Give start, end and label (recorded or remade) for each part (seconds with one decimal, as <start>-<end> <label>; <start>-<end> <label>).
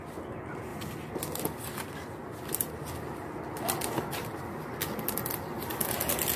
0.0-6.4 recorded